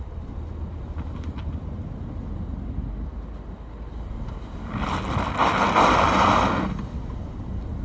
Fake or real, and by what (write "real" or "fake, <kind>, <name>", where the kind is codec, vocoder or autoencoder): real